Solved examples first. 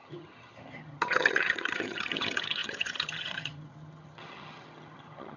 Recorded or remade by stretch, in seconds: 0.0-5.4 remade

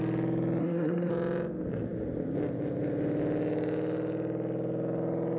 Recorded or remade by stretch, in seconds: 0.0-0.6 recorded; 0.6-1.1 remade; 1.1-5.4 recorded

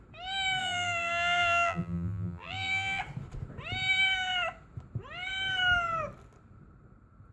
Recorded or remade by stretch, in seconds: 0.0-0.6 recorded; 0.6-3.0 remade; 3.0-7.3 recorded

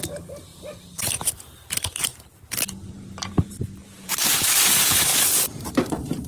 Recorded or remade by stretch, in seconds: 0.0-5.1 remade; 5.1-5.7 recorded; 5.7-6.3 remade

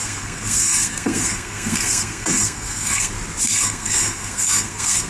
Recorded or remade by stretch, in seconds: 0.0-3.1 remade; 3.1-3.5 recorded; 3.5-5.1 remade

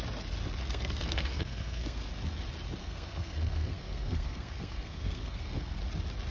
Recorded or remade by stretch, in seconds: 0.0-0.6 recorded; 0.6-2.1 remade; 2.1-2.8 recorded; 2.8-5.8 remade; 5.8-6.3 recorded

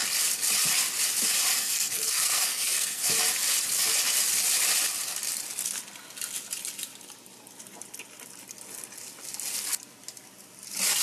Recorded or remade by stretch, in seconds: 0.0-1.5 recorded; 1.5-3.1 remade; 3.1-11.0 recorded